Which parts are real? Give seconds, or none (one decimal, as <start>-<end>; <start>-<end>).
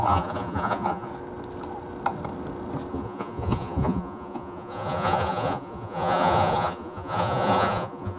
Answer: 1.1-2.9